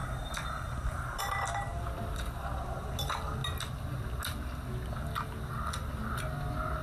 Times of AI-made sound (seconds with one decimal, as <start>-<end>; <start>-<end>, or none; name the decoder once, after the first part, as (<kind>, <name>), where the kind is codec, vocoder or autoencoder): none